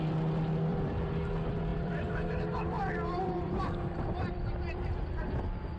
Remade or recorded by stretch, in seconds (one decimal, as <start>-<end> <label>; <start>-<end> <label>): 0.0-0.7 recorded; 0.7-1.2 remade; 1.2-1.7 recorded; 1.7-5.2 remade; 5.2-5.8 recorded